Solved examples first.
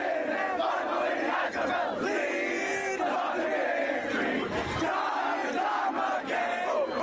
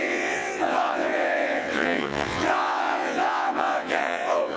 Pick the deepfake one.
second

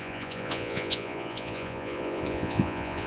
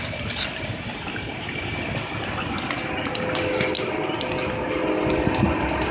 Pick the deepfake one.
first